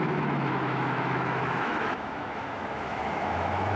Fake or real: fake